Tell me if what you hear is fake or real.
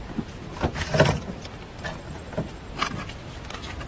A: real